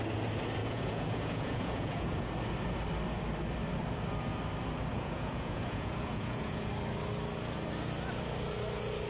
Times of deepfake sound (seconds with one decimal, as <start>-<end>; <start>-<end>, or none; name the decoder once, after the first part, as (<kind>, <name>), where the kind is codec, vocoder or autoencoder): 0.6-2.3 (vocoder, Vocos); 4.9-6.7